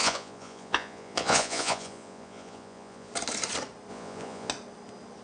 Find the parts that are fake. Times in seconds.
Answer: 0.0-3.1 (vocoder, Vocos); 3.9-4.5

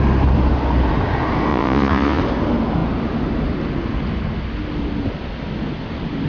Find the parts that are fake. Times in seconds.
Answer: 1.5-2.2 (vocoder, Vocos)

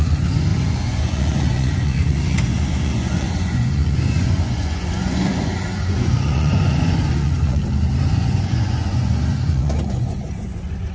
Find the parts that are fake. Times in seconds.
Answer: 0.0-7.6 (vocoder, Vocos); 8.1-10.9

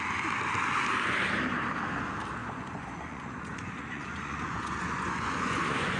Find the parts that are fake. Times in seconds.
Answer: 2.4-6.0 (vocoder, Vocos)

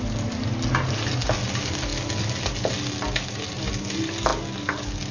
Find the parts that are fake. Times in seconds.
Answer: none

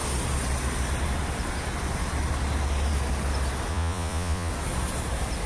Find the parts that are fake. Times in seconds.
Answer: 3.7-4.5 (vocoder, Vocos)

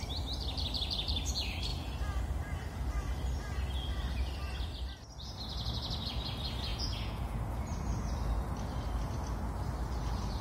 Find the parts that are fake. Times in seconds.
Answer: 6.7-7.4 (vocoder, Vocos)